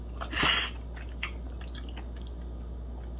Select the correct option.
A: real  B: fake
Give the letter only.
A